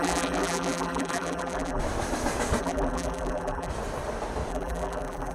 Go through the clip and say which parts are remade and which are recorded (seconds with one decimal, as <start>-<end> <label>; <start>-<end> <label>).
0.0-1.8 remade; 1.8-2.6 recorded; 2.6-3.7 remade; 3.7-4.5 recorded; 4.5-5.3 remade